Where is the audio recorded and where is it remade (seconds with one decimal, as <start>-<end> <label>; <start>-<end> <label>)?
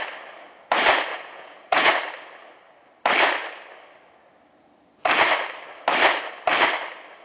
0.0-1.1 recorded; 1.1-1.9 remade; 1.9-7.2 recorded